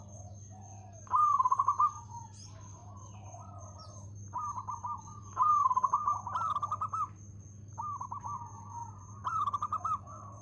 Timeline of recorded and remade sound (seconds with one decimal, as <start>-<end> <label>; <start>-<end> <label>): 0.0-2.8 recorded; 2.8-5.2 remade; 5.2-8.8 recorded; 8.8-10.4 remade